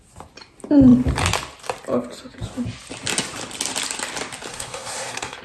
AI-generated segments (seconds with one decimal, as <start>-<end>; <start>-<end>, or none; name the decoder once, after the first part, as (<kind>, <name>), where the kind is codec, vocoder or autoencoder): 4.5-5.4 (codec, SNAC)